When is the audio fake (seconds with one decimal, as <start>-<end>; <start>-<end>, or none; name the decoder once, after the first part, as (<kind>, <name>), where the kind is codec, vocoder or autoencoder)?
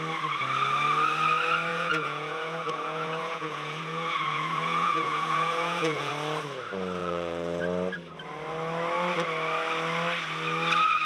1.7-6.1 (vocoder, Vocos); 7.0-7.6